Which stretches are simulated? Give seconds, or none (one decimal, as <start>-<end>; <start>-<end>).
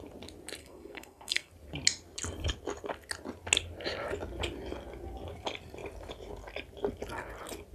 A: 0.6-1.5